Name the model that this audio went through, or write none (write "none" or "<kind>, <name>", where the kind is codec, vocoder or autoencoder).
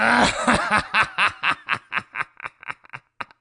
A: none